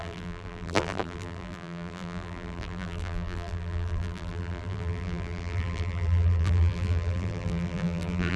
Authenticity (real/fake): fake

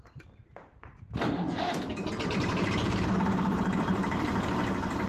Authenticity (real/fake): fake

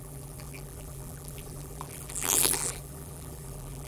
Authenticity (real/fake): fake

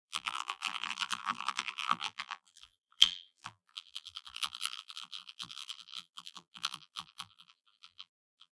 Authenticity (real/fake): fake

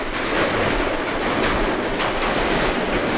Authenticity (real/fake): real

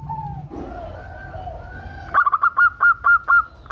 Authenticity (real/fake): real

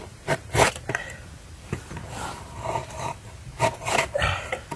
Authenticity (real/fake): fake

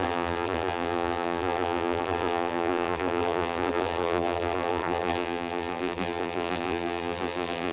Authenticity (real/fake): fake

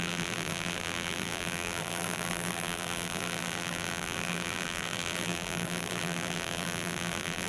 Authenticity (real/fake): fake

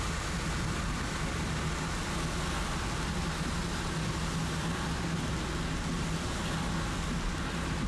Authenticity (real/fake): real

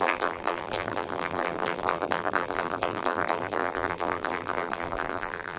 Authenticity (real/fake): fake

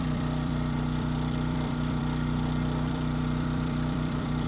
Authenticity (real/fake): fake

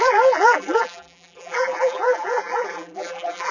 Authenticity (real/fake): fake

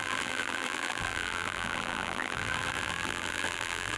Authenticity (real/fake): fake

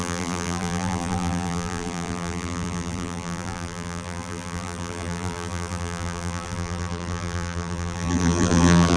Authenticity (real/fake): fake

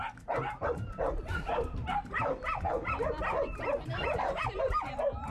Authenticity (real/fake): fake